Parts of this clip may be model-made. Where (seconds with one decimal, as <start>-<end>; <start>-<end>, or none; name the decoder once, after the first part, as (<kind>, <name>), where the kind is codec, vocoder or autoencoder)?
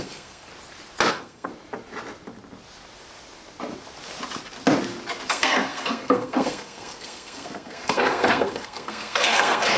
0.0-0.5 (codec, SNAC); 1.1-1.5; 5.3-9.8